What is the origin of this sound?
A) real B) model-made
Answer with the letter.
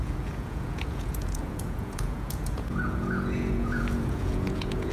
B